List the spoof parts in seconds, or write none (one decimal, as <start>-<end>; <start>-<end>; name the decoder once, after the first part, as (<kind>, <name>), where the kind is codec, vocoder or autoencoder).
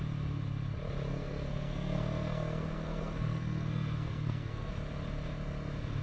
1.1-4.7 (codec, SNAC)